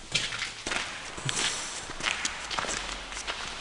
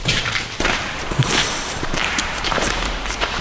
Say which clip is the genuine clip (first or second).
first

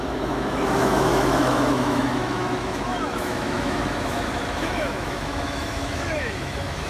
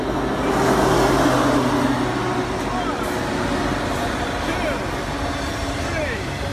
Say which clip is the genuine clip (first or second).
second